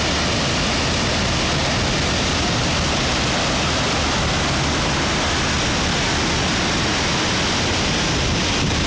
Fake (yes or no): no